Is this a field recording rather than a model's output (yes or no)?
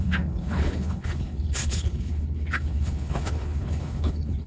no